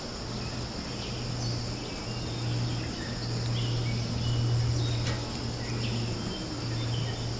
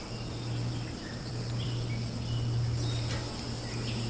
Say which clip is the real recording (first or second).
first